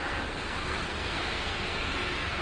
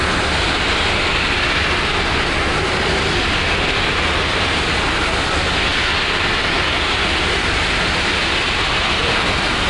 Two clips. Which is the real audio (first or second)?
second